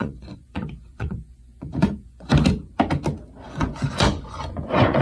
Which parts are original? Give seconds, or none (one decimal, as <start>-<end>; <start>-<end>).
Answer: 2.3-3.4